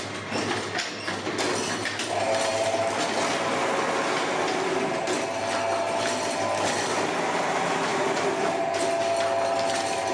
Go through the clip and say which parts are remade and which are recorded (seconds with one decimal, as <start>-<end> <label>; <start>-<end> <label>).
0.0-10.1 recorded